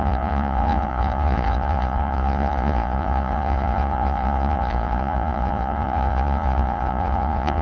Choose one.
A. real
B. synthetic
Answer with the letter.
B